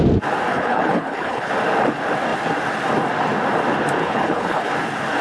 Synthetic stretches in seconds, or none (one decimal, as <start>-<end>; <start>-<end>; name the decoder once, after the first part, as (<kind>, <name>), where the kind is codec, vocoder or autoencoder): 0.5-1.5 (codec, HILCodec); 4.0-4.7